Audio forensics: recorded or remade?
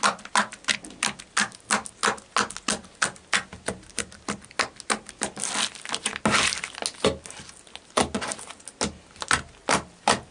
recorded